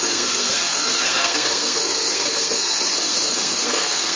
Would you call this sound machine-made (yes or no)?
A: yes